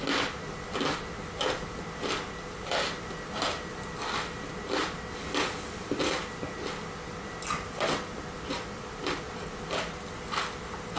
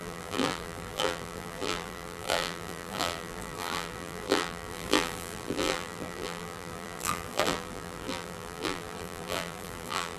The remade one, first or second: second